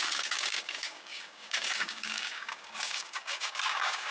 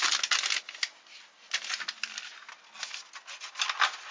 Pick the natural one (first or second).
second